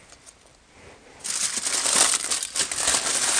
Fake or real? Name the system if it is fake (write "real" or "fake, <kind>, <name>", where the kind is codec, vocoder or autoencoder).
real